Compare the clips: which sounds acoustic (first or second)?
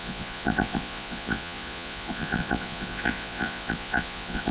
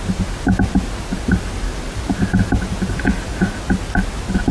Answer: second